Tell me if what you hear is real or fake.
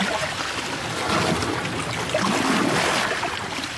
real